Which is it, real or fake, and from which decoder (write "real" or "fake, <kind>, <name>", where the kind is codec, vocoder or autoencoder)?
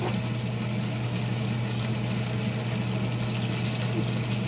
real